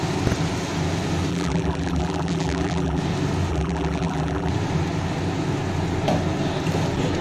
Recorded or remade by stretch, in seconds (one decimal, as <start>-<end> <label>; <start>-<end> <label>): 0.0-1.3 recorded; 1.3-3.0 remade; 3.0-3.5 recorded; 3.5-4.5 remade; 4.5-7.2 recorded